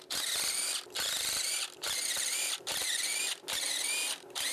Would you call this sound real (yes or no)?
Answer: yes